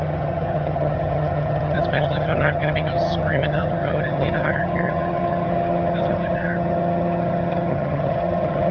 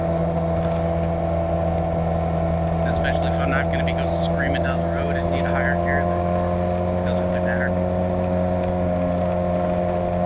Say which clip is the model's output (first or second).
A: first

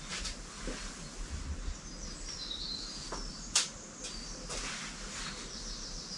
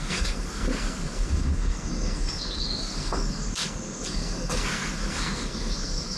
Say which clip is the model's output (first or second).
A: second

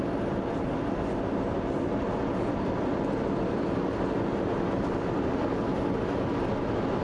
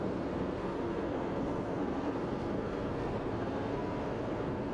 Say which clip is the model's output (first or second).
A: second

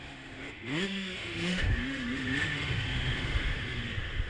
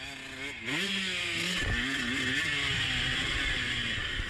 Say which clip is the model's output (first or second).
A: first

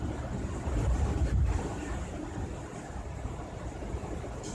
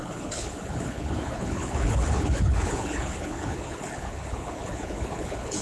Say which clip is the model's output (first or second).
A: second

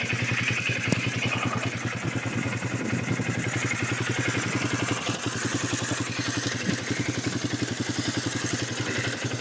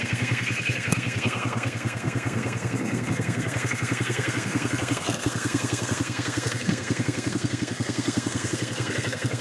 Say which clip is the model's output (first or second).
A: second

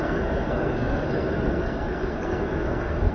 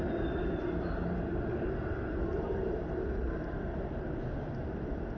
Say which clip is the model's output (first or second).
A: first